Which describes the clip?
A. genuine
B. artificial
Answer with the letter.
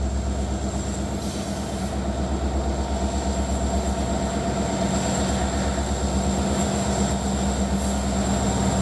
A